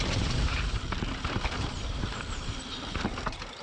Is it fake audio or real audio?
fake